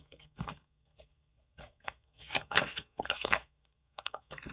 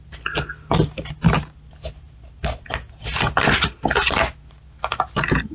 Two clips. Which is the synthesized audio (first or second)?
first